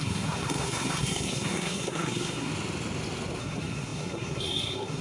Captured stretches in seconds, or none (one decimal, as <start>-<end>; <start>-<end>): 2.5-3.4